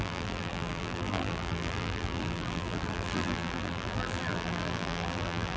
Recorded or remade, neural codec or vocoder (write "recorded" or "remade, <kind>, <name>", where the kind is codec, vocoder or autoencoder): remade, vocoder, BigVGAN v2